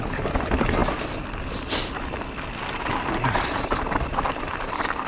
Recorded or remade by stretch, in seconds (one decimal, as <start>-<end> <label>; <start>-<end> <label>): 0.0-5.1 recorded